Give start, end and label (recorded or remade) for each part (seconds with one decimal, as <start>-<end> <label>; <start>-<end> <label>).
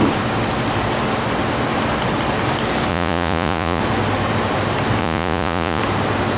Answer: 0.0-2.9 recorded; 2.9-3.8 remade; 3.8-5.0 recorded; 5.0-5.8 remade; 5.8-6.4 recorded